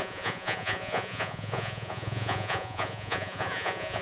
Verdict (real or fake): fake